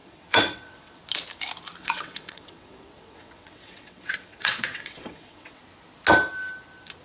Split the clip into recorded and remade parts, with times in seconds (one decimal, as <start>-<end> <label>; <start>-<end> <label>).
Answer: 0.0-1.0 remade; 1.0-1.8 recorded; 1.8-5.6 remade; 5.6-7.0 recorded